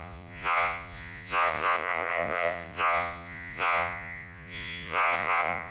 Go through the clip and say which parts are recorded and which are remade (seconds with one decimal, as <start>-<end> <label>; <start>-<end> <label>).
0.0-5.7 remade